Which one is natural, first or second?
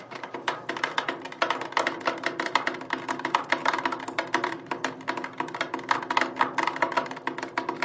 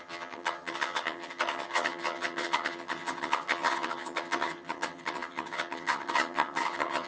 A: first